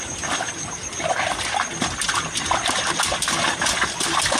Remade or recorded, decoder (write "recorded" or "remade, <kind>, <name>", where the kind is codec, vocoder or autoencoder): recorded